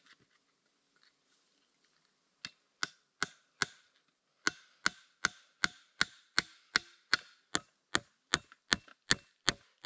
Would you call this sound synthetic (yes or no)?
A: no